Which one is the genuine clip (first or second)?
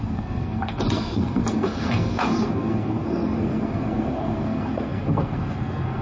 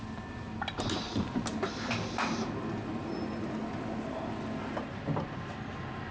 second